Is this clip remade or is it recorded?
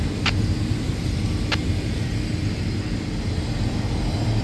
recorded